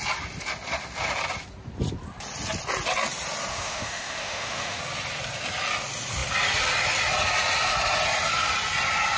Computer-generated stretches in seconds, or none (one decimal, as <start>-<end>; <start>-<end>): 3.5-4.8